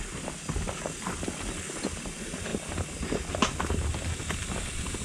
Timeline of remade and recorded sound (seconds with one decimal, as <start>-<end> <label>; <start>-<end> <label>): 0.0-5.0 recorded